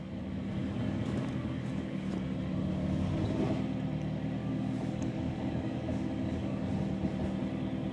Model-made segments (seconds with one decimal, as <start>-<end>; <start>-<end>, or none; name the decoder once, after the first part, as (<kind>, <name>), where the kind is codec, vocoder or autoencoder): 0.6-2.1 (codec, DAC); 4.4-6.7